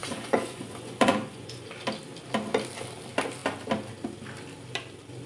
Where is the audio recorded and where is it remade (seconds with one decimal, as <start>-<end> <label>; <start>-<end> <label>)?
0.0-1.7 remade; 1.7-5.3 recorded